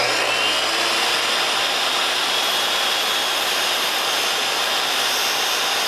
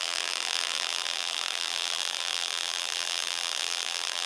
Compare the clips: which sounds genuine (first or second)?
first